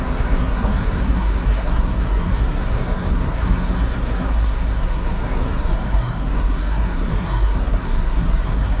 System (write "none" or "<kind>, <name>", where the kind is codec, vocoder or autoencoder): codec, SNAC